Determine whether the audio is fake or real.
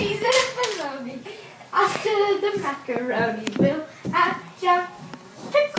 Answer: real